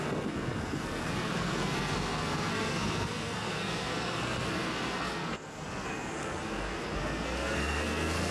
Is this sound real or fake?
fake